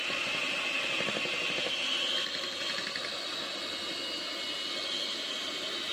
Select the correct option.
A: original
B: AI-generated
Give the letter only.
A